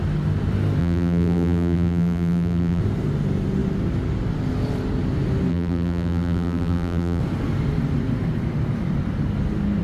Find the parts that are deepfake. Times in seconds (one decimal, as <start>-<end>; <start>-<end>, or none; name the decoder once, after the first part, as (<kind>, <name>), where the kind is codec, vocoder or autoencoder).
0.8-2.8 (vocoder, BigVGAN v2); 5.5-7.2

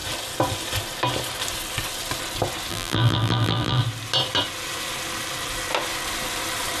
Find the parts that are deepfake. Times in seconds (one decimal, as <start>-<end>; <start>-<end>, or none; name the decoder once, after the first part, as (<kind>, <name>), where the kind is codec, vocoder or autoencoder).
2.7-3.8 (vocoder, BigVGAN v2)

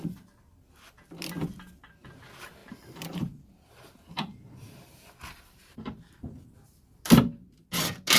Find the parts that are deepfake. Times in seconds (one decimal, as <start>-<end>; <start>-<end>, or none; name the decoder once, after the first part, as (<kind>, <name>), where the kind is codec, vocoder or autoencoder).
2.6-6.2 (vocoder, BigVGAN v2)

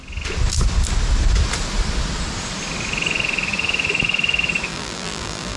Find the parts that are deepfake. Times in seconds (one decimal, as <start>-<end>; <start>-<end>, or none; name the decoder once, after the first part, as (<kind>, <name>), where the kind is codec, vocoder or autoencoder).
4.7-5.6 (vocoder, BigVGAN v2)

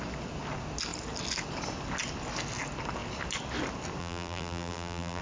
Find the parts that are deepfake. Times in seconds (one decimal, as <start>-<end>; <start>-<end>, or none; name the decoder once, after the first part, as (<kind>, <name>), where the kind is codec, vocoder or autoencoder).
4.0-5.2 (vocoder, BigVGAN v2)

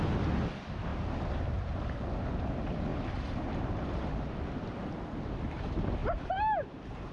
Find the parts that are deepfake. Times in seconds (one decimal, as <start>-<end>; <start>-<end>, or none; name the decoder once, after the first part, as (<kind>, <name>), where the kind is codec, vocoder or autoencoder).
0.9-1.7 (vocoder, BigVGAN v2); 2.9-4.0; 6.0-7.1

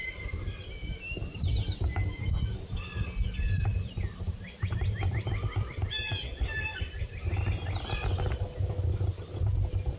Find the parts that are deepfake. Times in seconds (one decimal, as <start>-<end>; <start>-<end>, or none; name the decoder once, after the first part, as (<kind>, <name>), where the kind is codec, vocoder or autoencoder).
0.0-1.5 (vocoder, BigVGAN v2); 3.7-4.4; 6.7-7.3